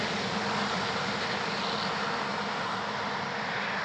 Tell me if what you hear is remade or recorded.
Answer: recorded